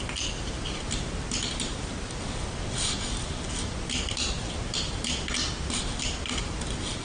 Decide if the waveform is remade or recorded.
recorded